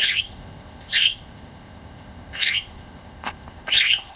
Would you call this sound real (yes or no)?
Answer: no